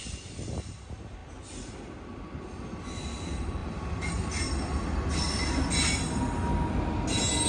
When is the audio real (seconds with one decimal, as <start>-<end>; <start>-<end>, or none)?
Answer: 0.0-7.5